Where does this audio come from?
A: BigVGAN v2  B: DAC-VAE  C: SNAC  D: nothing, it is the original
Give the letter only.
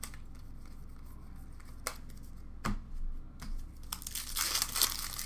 D